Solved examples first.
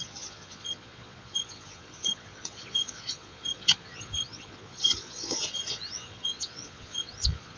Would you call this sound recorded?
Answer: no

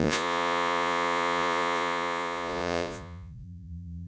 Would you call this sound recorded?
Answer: no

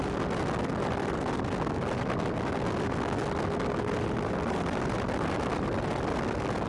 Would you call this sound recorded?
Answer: yes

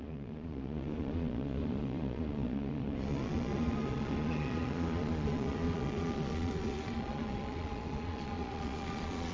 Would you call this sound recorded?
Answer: no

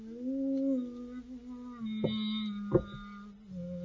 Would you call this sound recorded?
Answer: yes